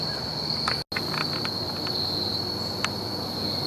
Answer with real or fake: real